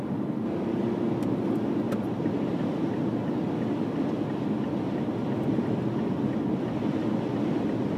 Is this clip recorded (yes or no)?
yes